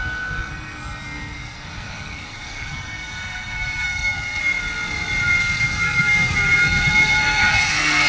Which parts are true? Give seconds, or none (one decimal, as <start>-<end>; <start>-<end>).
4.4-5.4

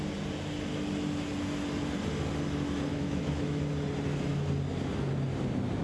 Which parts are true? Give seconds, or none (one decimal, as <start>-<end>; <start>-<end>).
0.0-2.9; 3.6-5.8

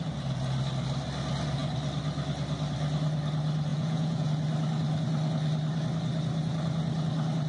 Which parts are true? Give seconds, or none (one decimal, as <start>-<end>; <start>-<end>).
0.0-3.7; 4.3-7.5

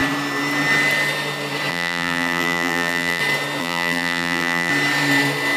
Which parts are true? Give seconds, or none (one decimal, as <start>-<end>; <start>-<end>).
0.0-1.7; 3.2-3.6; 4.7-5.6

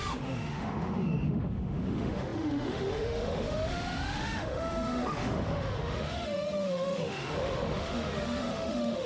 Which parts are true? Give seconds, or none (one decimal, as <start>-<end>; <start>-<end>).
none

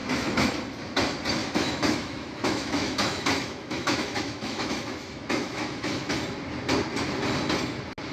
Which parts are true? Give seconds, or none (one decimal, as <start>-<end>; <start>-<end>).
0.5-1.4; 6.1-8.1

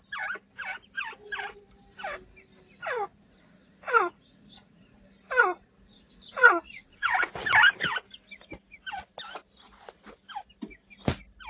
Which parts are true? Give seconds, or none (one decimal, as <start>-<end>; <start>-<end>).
0.0-3.1; 5.0-5.9; 7.3-11.5

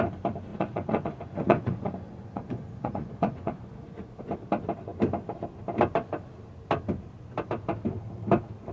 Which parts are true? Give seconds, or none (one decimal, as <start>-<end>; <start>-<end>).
0.0-0.5; 4.2-8.7